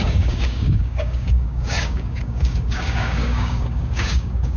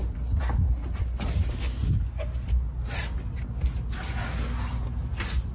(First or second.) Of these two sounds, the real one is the second